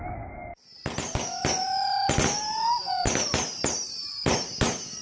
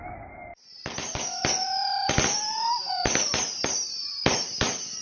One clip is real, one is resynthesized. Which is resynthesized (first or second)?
second